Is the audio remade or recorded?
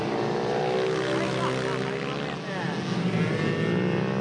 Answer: recorded